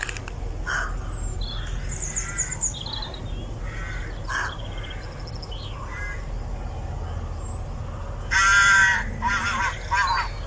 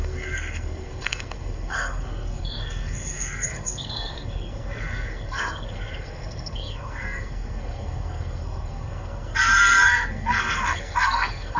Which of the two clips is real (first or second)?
first